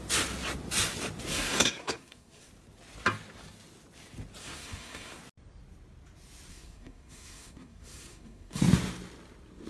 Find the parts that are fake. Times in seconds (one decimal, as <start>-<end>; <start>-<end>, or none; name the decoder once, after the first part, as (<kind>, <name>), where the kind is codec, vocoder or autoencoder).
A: 1.3-2.5 (codec, SNAC); 4.4-5.2; 6.5-8.6